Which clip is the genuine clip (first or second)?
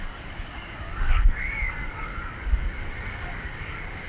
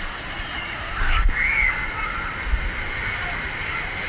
second